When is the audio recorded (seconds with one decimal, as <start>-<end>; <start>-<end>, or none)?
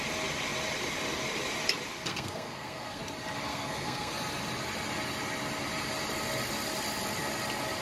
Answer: 0.0-2.1; 3.0-3.5; 4.1-7.8